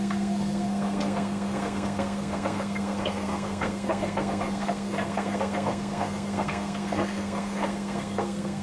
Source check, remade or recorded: remade